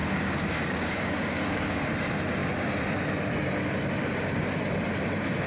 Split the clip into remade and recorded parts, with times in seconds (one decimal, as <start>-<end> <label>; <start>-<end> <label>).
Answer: 0.0-1.9 remade; 1.9-4.0 recorded; 4.0-4.6 remade; 4.6-5.5 recorded